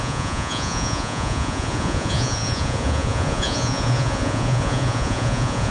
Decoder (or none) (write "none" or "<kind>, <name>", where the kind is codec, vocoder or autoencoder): vocoder, Vocos